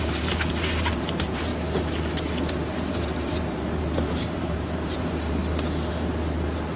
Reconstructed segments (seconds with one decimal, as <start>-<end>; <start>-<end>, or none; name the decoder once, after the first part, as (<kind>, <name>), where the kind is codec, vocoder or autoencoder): 0.0-1.5 (vocoder, BigVGAN v2); 2.5-5.4

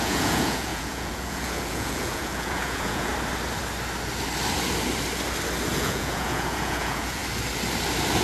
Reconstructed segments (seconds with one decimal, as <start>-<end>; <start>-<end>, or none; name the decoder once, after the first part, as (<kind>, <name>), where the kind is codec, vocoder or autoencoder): 0.0-3.1 (vocoder, Vocos); 5.7-7.2

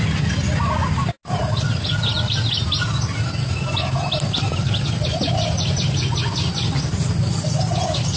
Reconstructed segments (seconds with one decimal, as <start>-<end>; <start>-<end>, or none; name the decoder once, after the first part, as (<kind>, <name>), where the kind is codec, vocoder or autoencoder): none

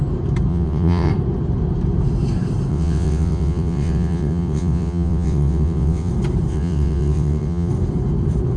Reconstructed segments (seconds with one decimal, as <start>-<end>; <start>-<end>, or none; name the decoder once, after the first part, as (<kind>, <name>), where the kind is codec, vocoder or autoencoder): 0.5-1.1 (vocoder, WaveNeXt); 2.7-6.1; 6.5-7.7

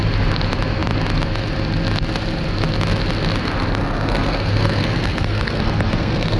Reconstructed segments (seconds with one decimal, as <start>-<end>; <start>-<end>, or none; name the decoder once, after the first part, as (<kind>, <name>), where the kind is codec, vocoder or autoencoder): 3.8-6.4 (codec, SNAC)

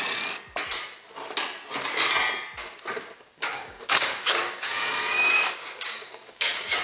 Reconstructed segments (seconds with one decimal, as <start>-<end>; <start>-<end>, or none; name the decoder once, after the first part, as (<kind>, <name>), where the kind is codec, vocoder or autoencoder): 2.6-6.8 (codec, DAC)

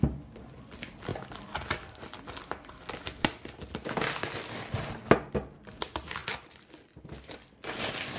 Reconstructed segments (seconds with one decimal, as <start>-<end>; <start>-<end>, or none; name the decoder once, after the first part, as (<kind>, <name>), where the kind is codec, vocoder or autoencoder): none